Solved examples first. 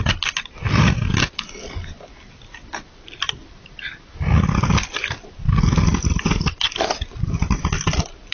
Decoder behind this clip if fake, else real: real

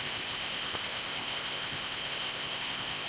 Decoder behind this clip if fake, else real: fake, codec, ZipCodec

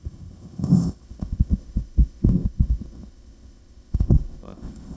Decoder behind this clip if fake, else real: fake, codec, ZipCodec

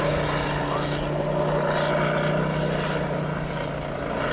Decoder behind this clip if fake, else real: real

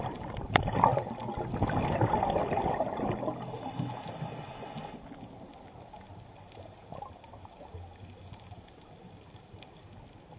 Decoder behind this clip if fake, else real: real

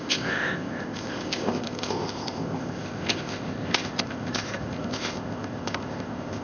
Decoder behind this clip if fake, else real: fake, codec, ZipCodec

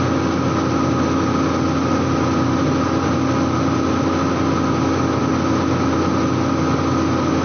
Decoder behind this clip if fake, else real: real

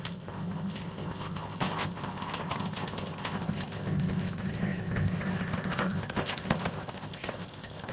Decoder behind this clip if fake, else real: fake, codec, ZipCodec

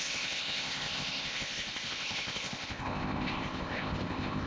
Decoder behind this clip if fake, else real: fake, codec, ZipCodec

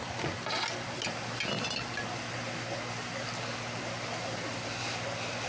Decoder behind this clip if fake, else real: real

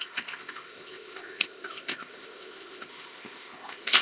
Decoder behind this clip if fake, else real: fake, codec, ZipCodec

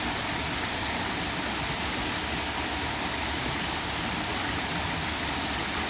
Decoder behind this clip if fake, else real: real